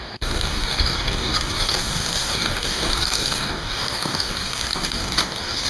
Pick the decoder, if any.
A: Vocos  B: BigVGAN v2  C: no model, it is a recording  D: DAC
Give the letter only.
D